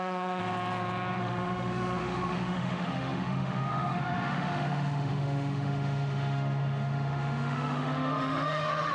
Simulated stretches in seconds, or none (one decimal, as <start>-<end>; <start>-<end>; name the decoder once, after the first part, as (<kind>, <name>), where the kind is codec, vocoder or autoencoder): 0.0-0.4 (autoencoder, DAC-VAE); 1.2-8.9